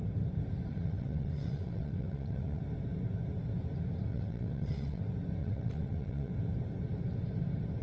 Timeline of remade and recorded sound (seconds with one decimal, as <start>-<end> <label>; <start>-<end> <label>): 0.0-0.7 recorded; 0.7-2.6 remade; 2.6-4.1 recorded; 4.1-5.0 remade; 5.0-5.4 recorded; 5.4-6.3 remade; 6.3-7.8 recorded